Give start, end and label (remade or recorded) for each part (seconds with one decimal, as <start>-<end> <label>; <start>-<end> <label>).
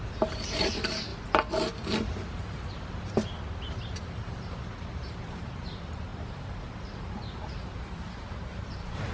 0.0-1.1 remade; 1.1-5.1 recorded; 5.1-9.1 remade